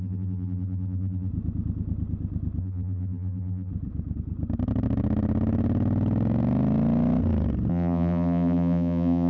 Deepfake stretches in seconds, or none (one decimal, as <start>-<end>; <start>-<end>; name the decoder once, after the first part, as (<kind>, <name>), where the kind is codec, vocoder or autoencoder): 0.0-1.3 (vocoder, BigVGAN v2); 2.6-3.7; 7.7-9.3

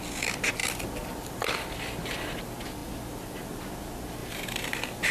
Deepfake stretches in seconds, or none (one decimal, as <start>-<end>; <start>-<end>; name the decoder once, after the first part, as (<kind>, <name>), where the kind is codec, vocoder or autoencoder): 0.6-1.5 (vocoder, BigVGAN v2); 4.2-5.1

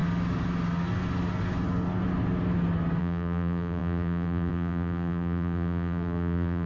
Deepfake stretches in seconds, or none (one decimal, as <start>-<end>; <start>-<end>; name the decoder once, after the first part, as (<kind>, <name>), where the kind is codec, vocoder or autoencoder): 3.0-6.7 (vocoder, BigVGAN v2)

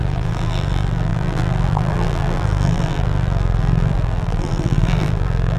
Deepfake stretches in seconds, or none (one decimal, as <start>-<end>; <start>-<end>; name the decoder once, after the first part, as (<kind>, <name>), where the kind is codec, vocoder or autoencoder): 0.0-5.6 (vocoder, BigVGAN v2)

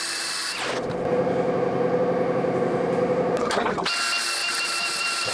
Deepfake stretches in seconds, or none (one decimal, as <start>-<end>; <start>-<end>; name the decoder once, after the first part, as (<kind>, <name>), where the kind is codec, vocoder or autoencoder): 4.4-5.3 (vocoder, BigVGAN v2)

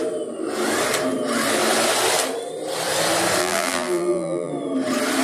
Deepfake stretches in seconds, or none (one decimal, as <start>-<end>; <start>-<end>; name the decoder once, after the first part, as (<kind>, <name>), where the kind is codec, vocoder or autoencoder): 3.4-4.5 (vocoder, BigVGAN v2)